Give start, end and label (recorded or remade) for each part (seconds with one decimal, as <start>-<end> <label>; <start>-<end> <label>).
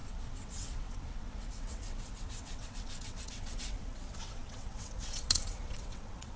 0.0-6.4 remade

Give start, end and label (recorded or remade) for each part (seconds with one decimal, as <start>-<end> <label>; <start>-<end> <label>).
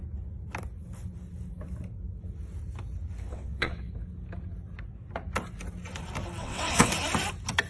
0.0-3.3 recorded; 3.3-3.9 remade; 3.9-6.4 recorded; 6.4-6.9 remade; 6.9-7.7 recorded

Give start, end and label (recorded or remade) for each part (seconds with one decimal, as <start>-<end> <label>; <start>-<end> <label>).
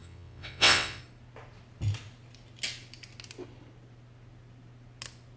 0.0-1.0 remade; 1.0-5.4 recorded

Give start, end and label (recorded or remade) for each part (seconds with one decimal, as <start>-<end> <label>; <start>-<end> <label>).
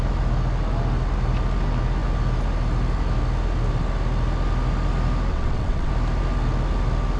0.0-5.3 recorded; 5.3-5.9 remade; 5.9-7.2 recorded